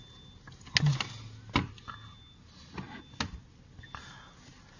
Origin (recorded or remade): recorded